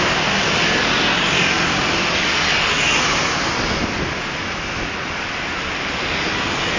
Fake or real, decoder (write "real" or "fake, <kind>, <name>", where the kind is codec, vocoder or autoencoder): real